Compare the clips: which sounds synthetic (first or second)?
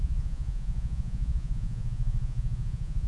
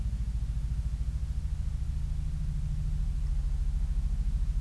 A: first